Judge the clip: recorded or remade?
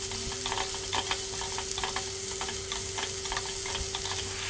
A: recorded